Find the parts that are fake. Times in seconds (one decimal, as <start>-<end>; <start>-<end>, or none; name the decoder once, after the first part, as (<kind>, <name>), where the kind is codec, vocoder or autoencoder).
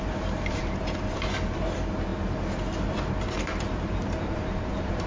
0.0-5.1 (vocoder, BigVGAN v2)